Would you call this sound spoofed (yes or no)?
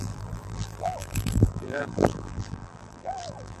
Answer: yes